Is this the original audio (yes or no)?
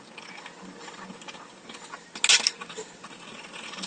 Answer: yes